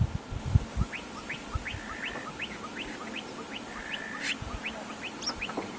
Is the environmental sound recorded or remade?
recorded